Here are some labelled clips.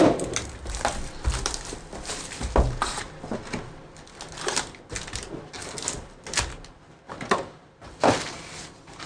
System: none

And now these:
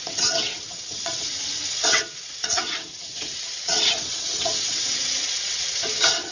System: vocoder, WaveNeXt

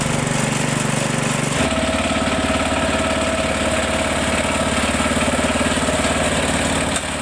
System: none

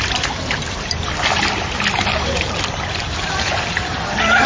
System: none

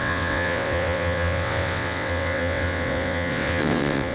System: vocoder, WaveNeXt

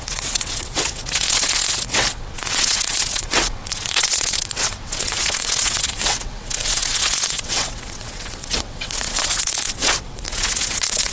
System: vocoder, WaveNeXt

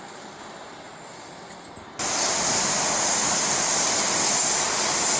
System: none